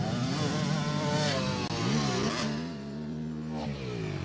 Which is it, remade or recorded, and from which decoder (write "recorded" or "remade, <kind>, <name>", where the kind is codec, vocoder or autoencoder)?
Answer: recorded